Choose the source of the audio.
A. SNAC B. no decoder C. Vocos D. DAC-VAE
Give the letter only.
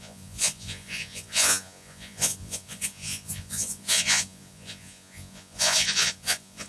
C